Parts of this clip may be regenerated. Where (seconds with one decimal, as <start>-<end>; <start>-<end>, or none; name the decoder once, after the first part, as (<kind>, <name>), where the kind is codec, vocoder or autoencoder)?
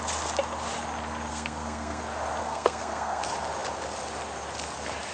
1.3-2.0 (codec, SNAC); 2.4-3.2